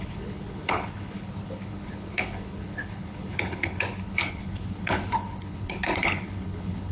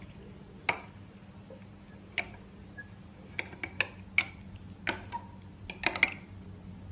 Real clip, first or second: second